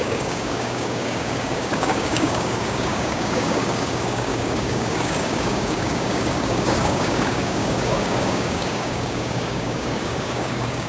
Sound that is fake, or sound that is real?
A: fake